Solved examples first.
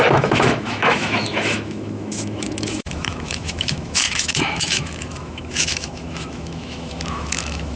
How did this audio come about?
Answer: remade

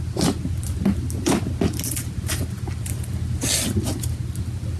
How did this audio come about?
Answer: recorded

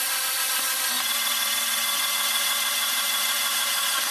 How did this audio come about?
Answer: remade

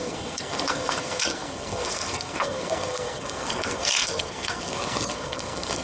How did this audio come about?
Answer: remade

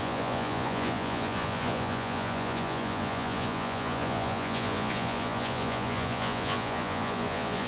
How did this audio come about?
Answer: remade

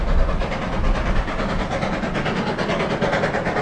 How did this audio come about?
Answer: recorded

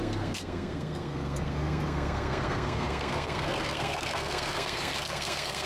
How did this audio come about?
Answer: remade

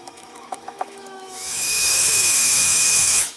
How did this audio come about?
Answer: remade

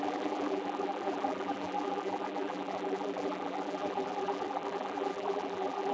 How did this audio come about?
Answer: remade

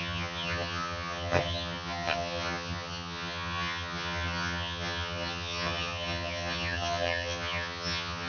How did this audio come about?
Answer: remade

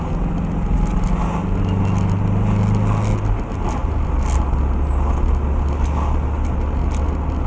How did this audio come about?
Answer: recorded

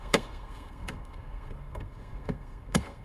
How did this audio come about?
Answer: remade